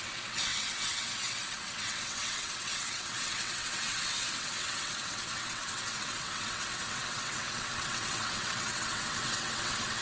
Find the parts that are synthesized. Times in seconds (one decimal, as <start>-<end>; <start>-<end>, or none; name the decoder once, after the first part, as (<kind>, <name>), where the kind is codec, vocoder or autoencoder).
0.0-10.0 (vocoder, WaveNeXt)

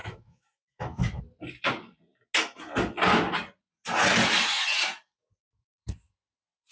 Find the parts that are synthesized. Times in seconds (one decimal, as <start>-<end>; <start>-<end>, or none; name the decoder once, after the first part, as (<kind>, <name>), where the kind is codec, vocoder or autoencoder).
0.0-1.2 (autoencoder, DAC-VAE)

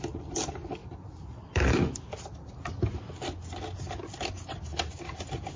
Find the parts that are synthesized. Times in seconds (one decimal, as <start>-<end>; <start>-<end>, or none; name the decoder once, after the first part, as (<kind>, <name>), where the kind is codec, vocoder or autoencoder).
none

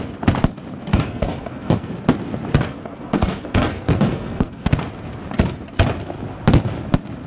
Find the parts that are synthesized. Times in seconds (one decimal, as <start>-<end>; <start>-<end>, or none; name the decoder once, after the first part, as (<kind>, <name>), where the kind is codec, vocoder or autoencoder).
0.9-1.9 (codec, SNAC); 2.7-4.7

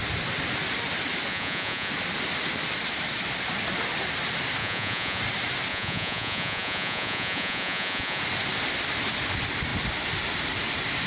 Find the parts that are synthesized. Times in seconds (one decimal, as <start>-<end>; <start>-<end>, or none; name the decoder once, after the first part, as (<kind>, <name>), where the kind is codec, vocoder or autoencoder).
1.3-1.9 (vocoder, Vocos); 4.6-5.2; 5.7-8.2